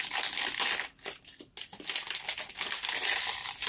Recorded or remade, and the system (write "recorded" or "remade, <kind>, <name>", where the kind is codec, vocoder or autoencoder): recorded